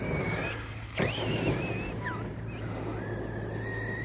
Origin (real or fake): real